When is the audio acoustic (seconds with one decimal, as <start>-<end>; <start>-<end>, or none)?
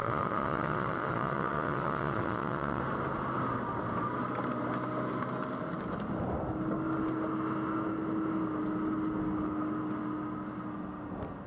2.8-11.5